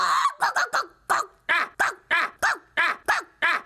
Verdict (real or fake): real